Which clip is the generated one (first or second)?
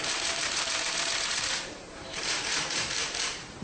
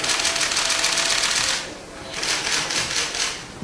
first